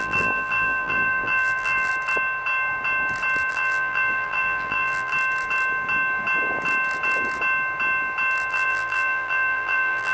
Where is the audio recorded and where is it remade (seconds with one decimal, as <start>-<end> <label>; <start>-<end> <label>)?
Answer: 0.0-1.9 remade; 1.9-3.5 recorded; 3.5-5.1 remade; 5.1-8.5 recorded; 8.5-10.1 remade